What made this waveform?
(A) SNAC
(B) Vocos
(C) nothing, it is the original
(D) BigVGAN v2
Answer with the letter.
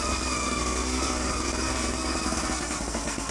A